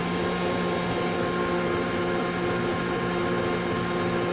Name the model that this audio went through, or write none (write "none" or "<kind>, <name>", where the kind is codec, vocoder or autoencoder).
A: none